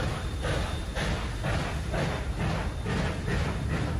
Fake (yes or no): no